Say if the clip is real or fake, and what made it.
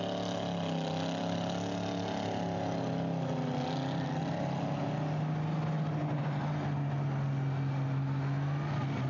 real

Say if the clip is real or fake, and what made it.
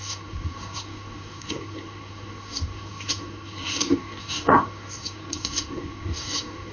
fake, codec, SNAC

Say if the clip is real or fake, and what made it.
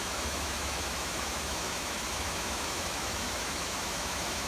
fake, autoencoder, DAC-VAE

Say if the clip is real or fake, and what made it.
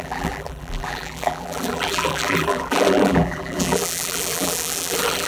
fake, vocoder, BigVGAN v2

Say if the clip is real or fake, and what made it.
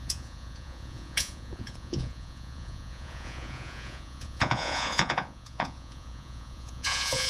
fake, vocoder, Vocos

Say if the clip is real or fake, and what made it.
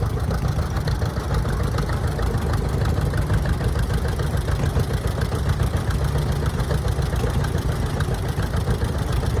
real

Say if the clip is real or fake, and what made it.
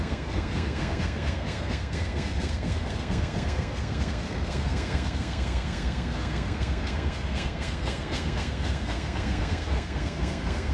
fake, codec, SNAC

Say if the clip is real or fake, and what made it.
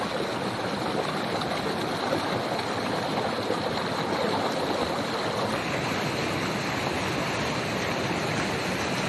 real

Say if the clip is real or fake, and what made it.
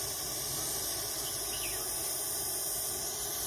real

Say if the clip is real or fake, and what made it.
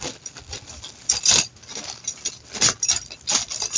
real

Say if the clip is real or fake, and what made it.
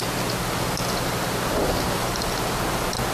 real